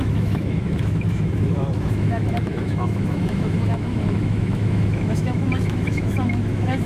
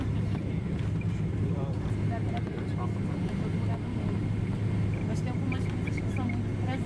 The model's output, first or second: first